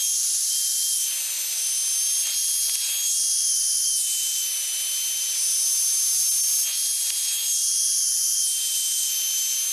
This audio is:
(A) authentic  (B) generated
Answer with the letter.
A